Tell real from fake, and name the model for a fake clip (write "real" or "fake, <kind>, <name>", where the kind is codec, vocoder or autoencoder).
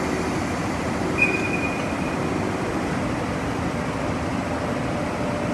real